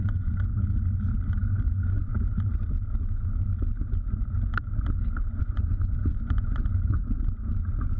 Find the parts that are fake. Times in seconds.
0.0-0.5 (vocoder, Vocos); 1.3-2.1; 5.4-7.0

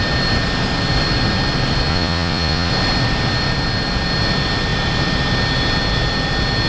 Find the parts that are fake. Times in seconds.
1.9-2.7 (vocoder, Vocos)

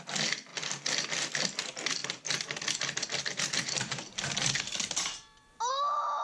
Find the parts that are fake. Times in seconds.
2.0-5.7 (vocoder, BigVGAN v2)